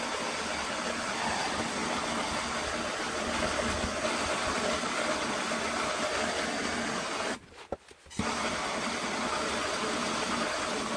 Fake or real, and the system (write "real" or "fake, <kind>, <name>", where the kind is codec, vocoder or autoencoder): real